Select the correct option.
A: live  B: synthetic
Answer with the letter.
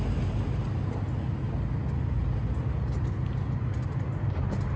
A